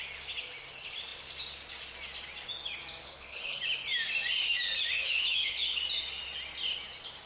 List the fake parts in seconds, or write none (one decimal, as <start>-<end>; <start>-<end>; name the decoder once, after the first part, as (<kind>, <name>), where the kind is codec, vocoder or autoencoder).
3.0-3.6 (codec, HILCodec); 5.0-5.8